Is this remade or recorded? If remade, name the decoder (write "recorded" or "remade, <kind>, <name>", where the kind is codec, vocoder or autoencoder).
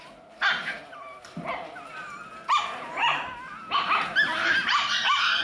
recorded